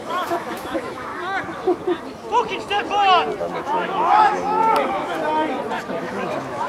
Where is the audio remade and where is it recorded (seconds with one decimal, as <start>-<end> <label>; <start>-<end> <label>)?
0.0-1.1 remade; 1.1-3.4 recorded; 3.4-5.2 remade; 5.2-6.0 recorded; 6.0-6.7 remade